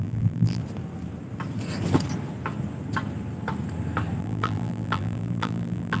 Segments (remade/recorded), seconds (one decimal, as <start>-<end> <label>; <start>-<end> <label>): 0.0-0.6 remade; 0.6-4.2 recorded; 4.2-6.0 remade